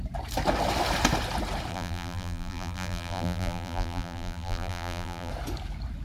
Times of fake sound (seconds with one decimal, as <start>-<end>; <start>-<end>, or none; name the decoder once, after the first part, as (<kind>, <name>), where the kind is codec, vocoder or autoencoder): 1.7-5.3 (vocoder, BigVGAN v2)